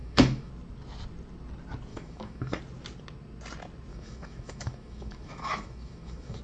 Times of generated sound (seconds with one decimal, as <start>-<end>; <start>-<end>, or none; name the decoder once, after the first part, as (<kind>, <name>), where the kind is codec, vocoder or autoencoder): 0.0-0.5 (autoencoder, DAC-VAE); 1.9-2.6; 3.9-6.4